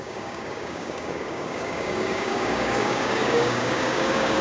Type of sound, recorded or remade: remade